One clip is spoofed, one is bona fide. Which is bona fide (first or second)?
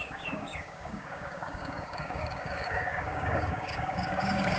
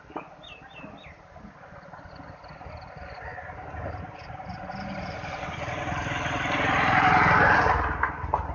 second